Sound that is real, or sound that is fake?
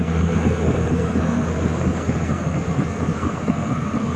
fake